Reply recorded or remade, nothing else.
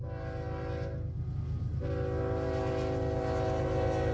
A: recorded